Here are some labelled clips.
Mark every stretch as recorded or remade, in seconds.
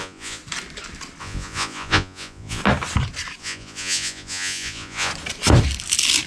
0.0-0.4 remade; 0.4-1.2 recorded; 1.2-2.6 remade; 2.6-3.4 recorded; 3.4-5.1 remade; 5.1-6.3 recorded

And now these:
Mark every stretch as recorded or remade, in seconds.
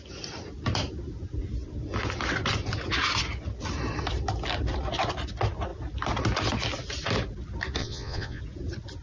0.0-7.8 recorded; 7.8-8.4 remade; 8.4-9.0 recorded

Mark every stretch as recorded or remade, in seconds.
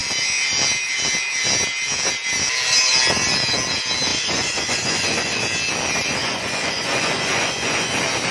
0.0-4.1 recorded; 4.1-5.4 remade; 5.4-6.2 recorded; 6.2-7.9 remade; 7.9-8.3 recorded